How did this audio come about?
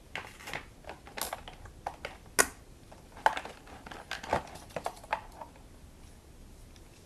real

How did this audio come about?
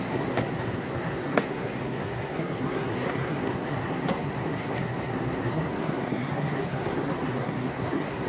fake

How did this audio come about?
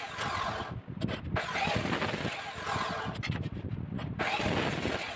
real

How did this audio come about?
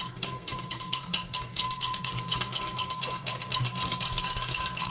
fake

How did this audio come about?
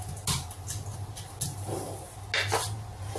real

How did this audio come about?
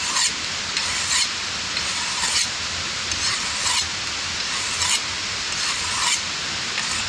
real